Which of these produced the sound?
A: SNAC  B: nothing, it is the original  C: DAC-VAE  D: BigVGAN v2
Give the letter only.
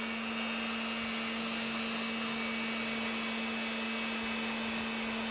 B